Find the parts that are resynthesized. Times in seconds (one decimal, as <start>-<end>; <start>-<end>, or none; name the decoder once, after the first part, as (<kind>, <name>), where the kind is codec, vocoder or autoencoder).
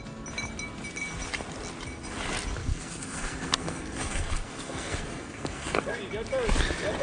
2.6-6.0 (codec, SNAC)